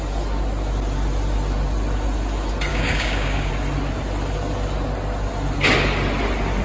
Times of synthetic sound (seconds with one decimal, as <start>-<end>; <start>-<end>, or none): 2.7-3.5